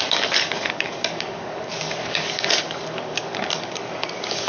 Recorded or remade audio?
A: remade